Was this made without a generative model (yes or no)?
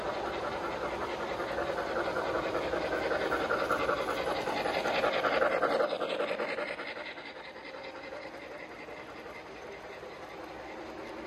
yes